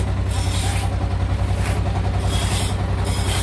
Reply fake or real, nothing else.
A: real